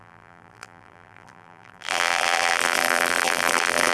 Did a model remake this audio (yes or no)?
yes